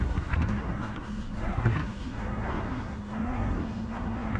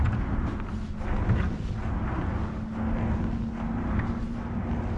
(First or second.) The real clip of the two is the second